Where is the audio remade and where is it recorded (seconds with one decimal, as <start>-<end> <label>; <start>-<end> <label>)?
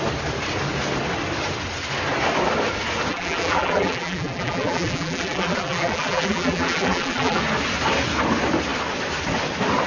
0.0-3.1 recorded; 3.1-7.4 remade; 7.4-9.9 recorded